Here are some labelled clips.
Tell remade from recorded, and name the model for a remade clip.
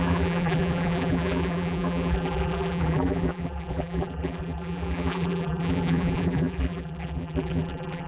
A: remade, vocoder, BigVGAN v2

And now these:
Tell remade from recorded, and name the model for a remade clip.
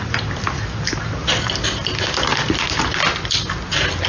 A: recorded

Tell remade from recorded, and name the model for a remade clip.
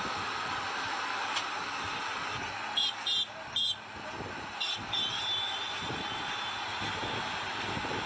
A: recorded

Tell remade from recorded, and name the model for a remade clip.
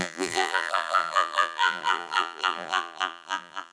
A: remade, vocoder, BigVGAN v2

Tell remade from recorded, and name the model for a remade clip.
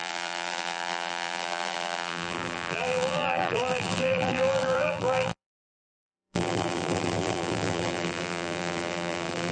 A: remade, vocoder, BigVGAN v2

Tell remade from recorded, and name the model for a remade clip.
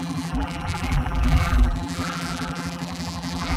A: remade, vocoder, BigVGAN v2